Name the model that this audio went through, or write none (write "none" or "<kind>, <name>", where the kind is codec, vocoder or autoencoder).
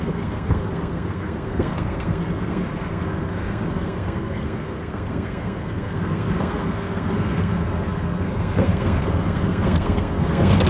codec, SNAC